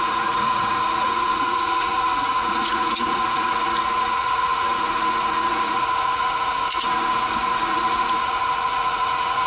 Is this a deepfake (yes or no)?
yes